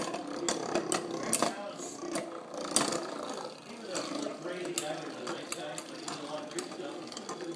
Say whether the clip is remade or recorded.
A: recorded